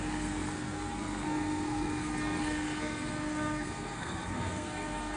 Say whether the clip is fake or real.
fake